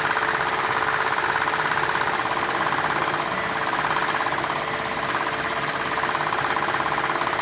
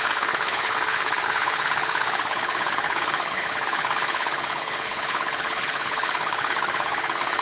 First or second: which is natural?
first